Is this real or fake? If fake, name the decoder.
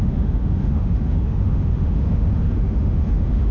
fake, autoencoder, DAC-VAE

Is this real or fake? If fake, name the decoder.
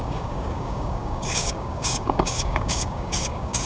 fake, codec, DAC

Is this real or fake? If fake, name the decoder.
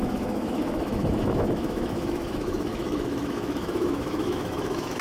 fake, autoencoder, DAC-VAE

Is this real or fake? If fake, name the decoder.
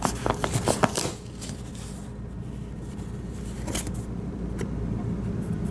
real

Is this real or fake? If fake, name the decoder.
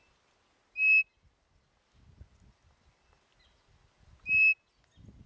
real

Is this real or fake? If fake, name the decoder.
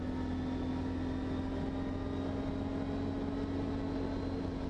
real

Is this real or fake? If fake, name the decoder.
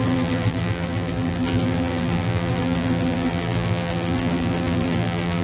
fake, vocoder, BigVGAN v2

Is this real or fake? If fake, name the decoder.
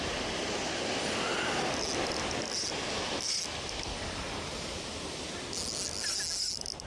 real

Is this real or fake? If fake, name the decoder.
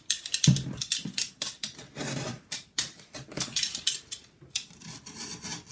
real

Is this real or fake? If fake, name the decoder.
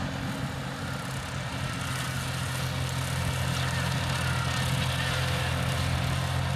real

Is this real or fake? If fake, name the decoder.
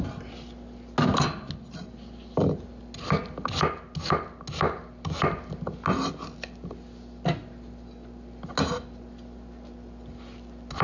real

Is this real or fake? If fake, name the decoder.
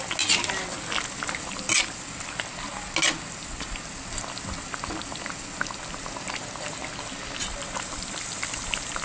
real